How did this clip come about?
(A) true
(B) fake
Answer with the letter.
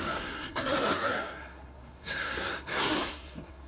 B